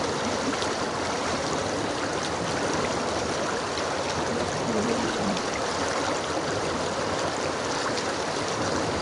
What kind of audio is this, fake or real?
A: fake